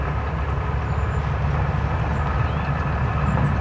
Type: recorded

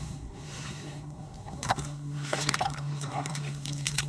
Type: remade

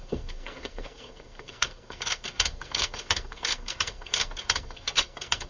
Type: remade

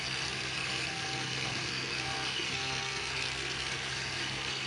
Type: remade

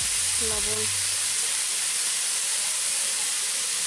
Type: recorded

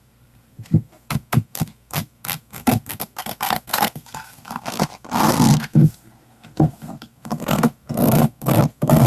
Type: remade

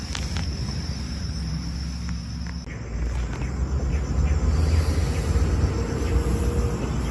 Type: recorded